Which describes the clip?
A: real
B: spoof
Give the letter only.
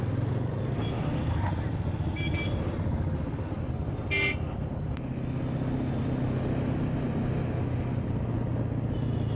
A